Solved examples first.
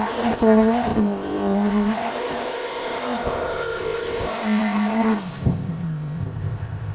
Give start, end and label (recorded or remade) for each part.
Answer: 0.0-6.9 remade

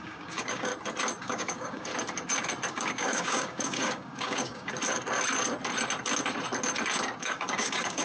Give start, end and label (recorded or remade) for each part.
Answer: 0.0-0.7 remade; 0.7-1.2 recorded; 1.2-1.9 remade; 1.9-2.7 recorded; 2.7-4.7 remade; 4.7-7.2 recorded; 7.2-8.0 remade

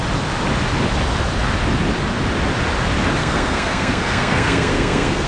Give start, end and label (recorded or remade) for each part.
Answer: 0.0-3.2 recorded; 3.2-5.3 remade

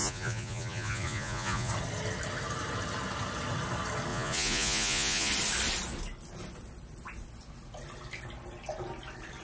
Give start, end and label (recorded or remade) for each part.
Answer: 0.0-1.7 remade; 1.7-4.1 recorded; 4.1-5.3 remade; 5.3-9.4 recorded

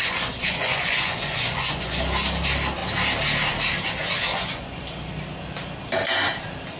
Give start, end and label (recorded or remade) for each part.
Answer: 0.0-2.0 remade; 2.0-4.3 recorded; 4.3-4.8 remade; 4.8-6.8 recorded

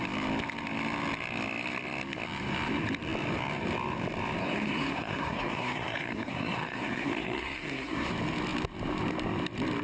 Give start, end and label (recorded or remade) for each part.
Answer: 0.0-4.4 recorded; 4.4-8.1 remade; 8.1-9.8 recorded

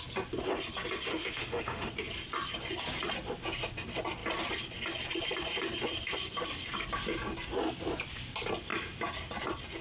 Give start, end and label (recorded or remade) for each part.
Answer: 0.0-1.1 recorded; 1.1-1.9 remade; 1.9-9.8 recorded

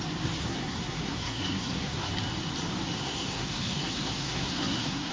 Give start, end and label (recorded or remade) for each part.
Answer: 0.0-0.4 recorded; 0.4-2.1 remade; 2.1-3.0 recorded; 3.0-5.1 remade